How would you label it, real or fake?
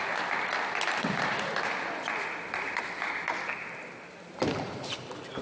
fake